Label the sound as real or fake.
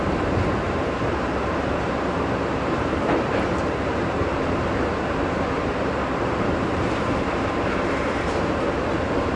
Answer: fake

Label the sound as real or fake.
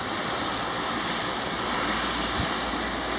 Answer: real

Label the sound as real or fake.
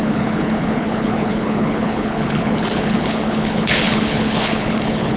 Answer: fake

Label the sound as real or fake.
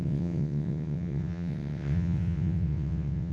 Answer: fake